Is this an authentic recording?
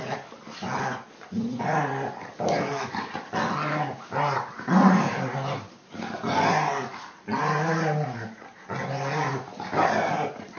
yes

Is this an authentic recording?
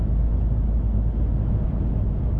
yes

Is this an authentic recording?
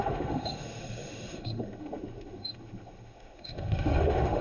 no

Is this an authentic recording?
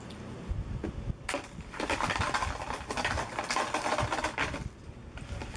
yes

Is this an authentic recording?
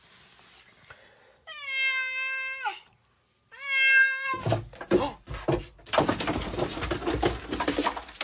yes